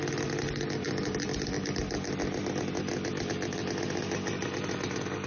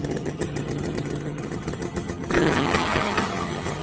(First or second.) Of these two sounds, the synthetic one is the second